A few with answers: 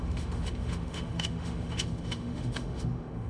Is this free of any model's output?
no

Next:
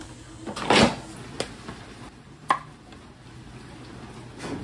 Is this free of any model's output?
yes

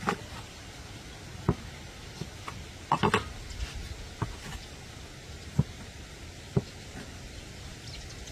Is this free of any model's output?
yes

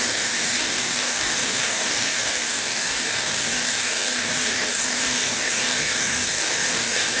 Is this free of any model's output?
no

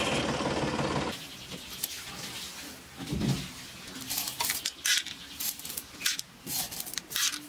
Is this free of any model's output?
yes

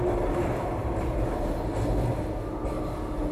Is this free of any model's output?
yes